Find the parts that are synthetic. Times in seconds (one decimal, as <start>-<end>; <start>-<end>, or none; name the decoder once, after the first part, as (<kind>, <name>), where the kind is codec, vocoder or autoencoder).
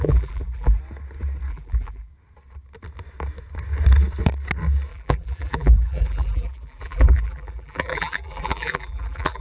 0.0-0.8 (vocoder, BigVGAN v2); 1.5-2.1; 4.9-9.4